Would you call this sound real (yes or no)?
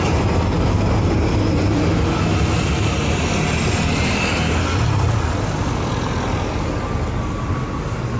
yes